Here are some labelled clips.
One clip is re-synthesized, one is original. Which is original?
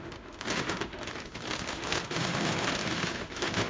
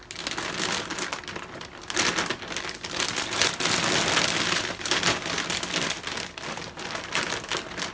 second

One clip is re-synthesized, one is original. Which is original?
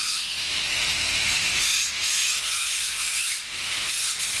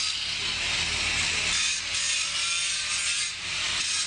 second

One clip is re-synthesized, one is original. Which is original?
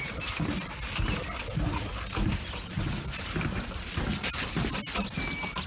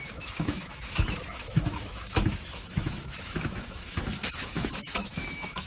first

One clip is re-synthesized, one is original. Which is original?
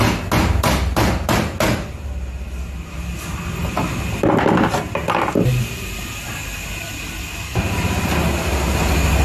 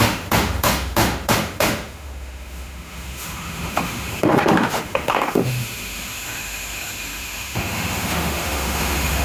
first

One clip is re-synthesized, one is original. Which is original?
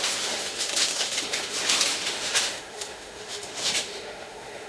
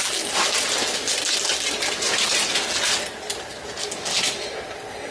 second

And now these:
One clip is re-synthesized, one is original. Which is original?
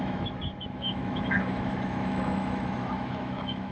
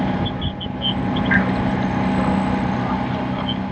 second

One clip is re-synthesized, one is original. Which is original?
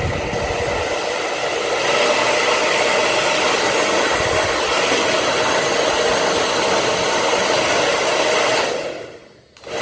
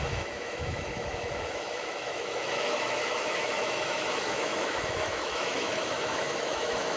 first